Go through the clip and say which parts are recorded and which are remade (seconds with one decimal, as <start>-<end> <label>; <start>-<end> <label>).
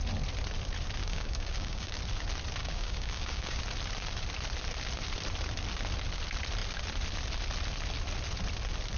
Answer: 0.0-1.0 recorded; 1.0-2.0 remade; 2.0-2.6 recorded; 2.6-3.6 remade; 3.6-9.0 recorded